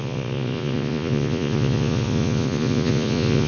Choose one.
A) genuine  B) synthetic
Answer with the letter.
B